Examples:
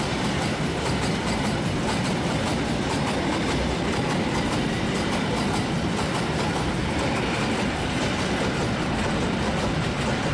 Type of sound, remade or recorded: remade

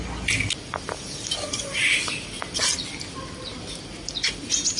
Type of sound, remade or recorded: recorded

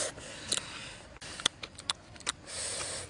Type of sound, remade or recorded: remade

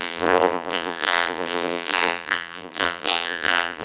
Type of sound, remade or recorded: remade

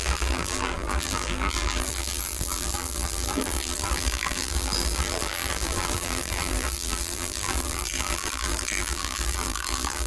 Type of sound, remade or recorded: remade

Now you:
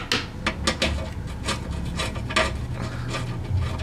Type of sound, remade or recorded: recorded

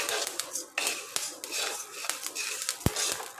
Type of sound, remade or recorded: recorded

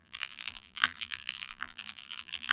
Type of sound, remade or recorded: remade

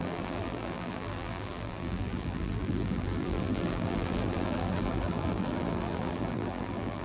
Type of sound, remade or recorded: remade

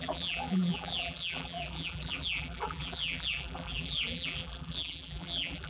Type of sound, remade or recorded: remade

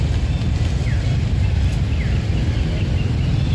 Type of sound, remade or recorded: recorded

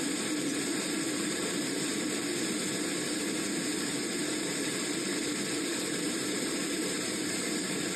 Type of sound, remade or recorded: remade